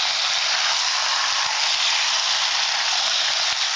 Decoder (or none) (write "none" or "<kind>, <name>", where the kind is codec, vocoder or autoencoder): none